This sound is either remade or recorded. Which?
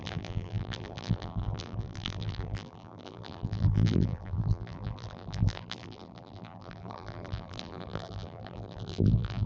remade